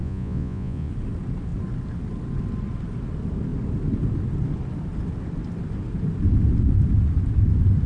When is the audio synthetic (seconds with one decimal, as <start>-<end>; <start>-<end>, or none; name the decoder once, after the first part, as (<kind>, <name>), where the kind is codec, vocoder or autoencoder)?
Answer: 0.0-0.9 (vocoder, Vocos)